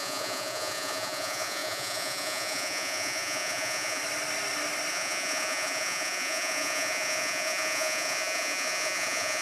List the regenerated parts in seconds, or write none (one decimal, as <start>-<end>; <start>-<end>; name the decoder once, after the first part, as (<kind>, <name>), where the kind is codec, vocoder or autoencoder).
0.0-4.0 (vocoder, Vocos); 4.9-9.4